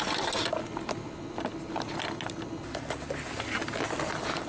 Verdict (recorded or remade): recorded